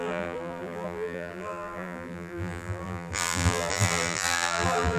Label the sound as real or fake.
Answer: fake